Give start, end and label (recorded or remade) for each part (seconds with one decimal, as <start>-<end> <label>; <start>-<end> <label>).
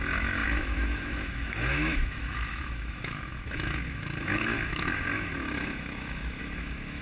0.0-7.0 remade